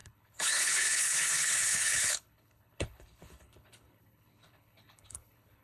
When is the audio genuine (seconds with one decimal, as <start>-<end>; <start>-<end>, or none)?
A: none

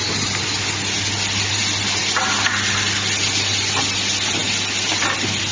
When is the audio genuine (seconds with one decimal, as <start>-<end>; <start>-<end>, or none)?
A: 0.0-5.5

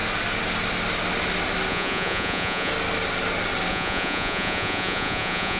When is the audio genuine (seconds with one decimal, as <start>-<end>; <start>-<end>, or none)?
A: 0.0-1.7; 2.7-3.7